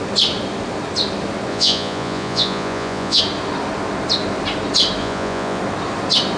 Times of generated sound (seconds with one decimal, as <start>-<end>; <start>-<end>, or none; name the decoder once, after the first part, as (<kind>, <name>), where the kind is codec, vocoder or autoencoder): 1.5-3.2 (vocoder, Vocos); 5.0-5.6